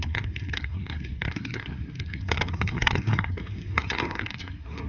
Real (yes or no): no